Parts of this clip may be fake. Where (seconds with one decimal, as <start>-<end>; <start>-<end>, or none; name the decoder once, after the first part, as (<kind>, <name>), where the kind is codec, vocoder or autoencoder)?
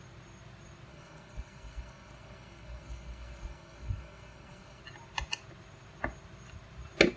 0.9-4.8 (codec, SNAC)